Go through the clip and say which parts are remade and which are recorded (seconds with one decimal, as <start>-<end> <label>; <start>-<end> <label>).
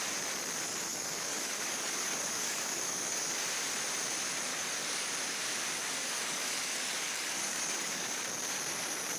0.0-0.9 recorded; 0.9-3.3 remade; 3.3-4.5 recorded; 4.5-5.1 remade; 5.1-5.8 recorded; 5.8-8.2 remade; 8.2-9.2 recorded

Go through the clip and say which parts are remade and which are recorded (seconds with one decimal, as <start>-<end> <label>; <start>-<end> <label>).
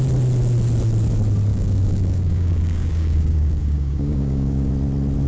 0.0-1.5 recorded; 1.5-4.7 remade; 4.7-5.3 recorded